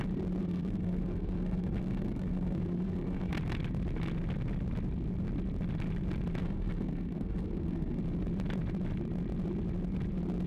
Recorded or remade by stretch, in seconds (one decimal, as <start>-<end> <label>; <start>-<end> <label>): 0.0-0.4 recorded; 0.4-3.3 remade; 3.3-6.4 recorded; 6.4-8.0 remade; 8.0-10.5 recorded